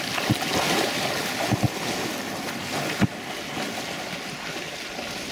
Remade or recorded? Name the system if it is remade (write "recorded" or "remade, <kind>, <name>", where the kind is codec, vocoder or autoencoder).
recorded